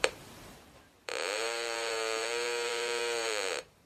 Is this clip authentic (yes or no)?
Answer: no